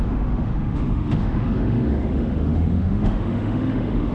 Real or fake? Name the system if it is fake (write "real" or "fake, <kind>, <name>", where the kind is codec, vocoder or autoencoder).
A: fake, autoencoder, DAC-VAE